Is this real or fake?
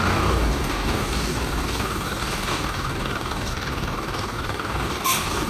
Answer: fake